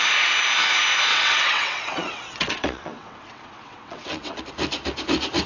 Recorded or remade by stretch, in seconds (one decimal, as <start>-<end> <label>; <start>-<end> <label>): 0.0-1.1 recorded; 1.1-4.4 remade; 4.4-5.5 recorded